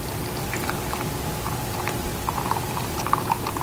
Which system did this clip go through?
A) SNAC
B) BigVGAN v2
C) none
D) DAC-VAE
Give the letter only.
C